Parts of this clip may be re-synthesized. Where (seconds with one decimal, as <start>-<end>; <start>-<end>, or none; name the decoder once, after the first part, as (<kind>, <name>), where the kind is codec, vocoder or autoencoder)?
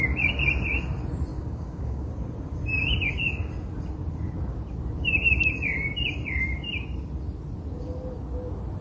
1.3-2.1 (codec, DAC)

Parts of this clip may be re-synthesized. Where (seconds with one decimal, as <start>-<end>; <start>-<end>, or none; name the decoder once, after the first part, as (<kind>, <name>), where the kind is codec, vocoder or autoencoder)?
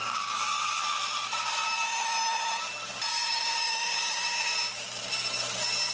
0.0-0.8 (codec, DAC); 3.1-4.3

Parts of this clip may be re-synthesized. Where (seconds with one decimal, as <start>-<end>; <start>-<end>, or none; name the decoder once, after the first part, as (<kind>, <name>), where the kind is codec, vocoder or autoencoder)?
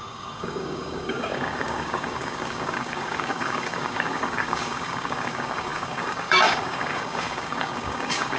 0.0-8.4 (codec, DAC)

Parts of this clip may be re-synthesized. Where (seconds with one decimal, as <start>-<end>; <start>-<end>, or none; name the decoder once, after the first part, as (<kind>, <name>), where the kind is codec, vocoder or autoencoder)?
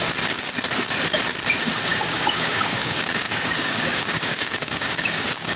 1.9-5.6 (codec, DAC)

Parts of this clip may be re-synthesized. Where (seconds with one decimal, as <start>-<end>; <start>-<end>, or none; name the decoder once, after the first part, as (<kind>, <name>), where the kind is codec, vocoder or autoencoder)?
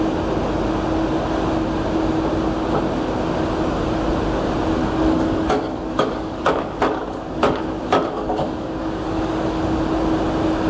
4.8-9.6 (codec, DAC)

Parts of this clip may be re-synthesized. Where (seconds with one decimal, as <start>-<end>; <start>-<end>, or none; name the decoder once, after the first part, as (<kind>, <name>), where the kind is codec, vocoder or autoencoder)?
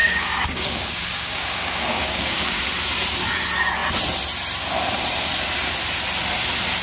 0.0-2.6 (codec, DAC)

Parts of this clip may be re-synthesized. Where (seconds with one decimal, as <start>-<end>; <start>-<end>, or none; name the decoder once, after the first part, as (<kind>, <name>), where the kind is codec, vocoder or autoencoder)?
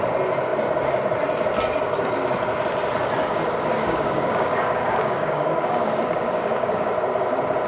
3.3-6.9 (codec, DAC)